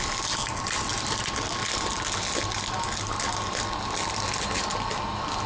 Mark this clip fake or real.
real